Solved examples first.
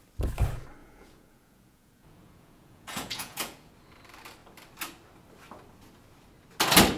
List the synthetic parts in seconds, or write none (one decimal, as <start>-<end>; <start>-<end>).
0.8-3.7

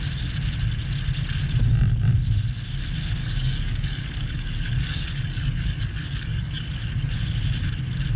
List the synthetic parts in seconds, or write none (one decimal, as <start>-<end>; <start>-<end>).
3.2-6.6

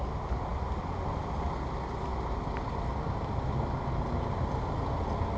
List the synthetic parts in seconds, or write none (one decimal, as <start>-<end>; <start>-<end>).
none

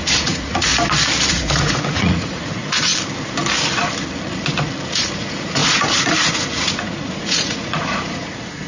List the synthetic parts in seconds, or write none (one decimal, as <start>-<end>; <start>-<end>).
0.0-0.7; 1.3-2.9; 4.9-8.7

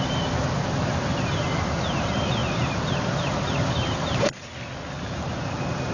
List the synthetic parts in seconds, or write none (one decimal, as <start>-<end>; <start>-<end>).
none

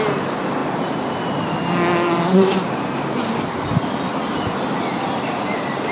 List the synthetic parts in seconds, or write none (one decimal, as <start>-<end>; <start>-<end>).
none